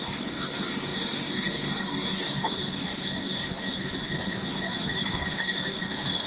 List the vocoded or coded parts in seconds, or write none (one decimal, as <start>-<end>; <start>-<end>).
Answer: 0.0-6.3